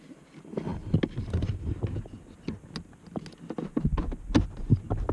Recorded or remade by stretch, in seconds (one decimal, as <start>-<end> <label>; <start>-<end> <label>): 0.0-5.1 recorded